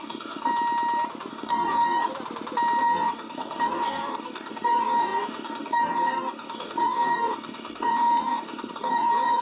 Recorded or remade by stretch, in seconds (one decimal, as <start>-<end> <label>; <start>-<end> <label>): 0.0-0.5 remade; 0.5-1.3 recorded; 1.3-2.1 remade; 2.1-2.8 recorded; 2.8-9.4 remade